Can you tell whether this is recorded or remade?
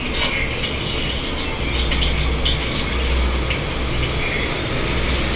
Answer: recorded